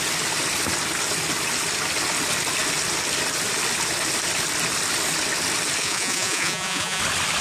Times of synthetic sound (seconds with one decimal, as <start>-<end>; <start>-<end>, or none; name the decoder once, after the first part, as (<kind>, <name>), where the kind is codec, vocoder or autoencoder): 5.8-7.0 (vocoder, Vocos)

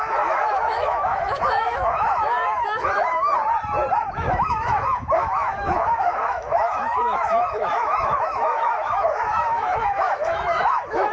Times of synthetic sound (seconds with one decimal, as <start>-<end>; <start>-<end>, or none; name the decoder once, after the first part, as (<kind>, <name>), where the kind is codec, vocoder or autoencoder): 0.0-3.3 (autoencoder, DAC-VAE); 4.0-11.1

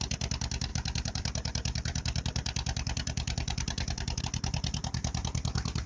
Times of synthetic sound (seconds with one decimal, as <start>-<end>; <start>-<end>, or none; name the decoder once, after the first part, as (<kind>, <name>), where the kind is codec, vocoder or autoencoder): 0.7-4.2 (vocoder, BigVGAN v2)